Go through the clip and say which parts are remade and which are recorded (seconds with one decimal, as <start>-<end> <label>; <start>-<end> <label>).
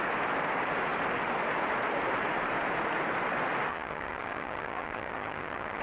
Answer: 0.0-3.7 recorded; 3.7-5.8 remade